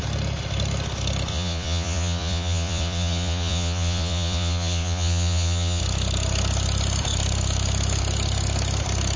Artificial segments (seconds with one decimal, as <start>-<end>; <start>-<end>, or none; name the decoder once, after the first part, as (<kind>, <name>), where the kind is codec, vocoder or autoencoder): 1.3-5.8 (vocoder, Vocos)